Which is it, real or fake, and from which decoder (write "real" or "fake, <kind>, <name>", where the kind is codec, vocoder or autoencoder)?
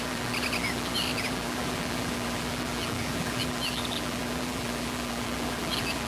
fake, vocoder, BigVGAN v2